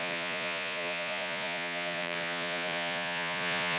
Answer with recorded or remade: remade